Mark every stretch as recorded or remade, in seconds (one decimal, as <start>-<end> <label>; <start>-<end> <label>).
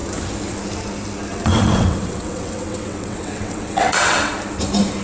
0.0-1.3 recorded; 1.3-4.3 remade; 4.3-5.0 recorded